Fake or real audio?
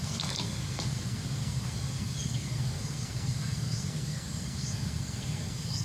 fake